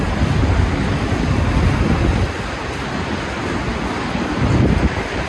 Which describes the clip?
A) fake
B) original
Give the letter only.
B